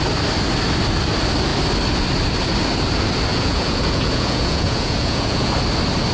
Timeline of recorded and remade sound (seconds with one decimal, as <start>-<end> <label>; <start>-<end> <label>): 0.0-3.3 recorded; 3.3-5.5 remade; 5.5-6.1 recorded